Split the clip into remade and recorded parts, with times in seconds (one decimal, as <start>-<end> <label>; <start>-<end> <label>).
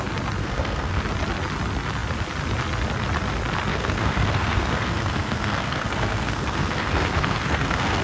0.0-0.4 recorded; 0.4-1.0 remade; 1.0-3.7 recorded; 3.7-8.0 remade